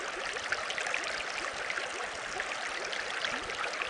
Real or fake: real